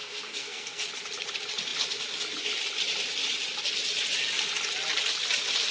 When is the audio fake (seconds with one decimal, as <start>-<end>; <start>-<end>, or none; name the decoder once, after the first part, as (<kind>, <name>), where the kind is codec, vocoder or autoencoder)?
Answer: 0.0-0.9 (codec, SNAC)